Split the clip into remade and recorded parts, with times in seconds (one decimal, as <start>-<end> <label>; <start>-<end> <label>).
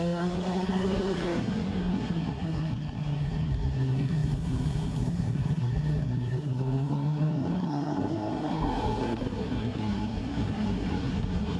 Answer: 0.0-11.6 remade